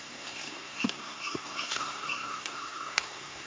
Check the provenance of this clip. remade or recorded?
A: remade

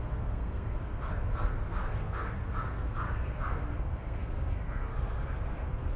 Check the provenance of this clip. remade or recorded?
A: remade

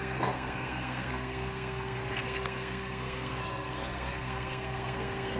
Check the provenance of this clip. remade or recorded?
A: remade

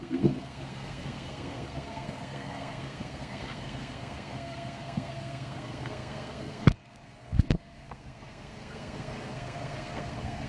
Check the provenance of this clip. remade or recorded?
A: remade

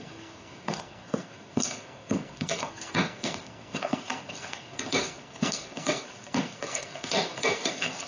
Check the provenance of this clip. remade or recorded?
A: remade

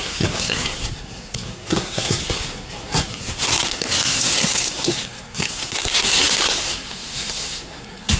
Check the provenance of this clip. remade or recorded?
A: remade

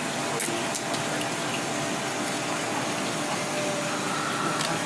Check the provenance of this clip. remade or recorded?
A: recorded